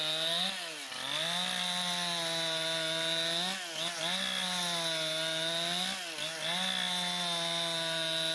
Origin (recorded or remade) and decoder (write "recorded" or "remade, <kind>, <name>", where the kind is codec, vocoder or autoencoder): recorded